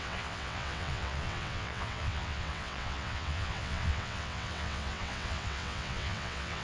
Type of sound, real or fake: fake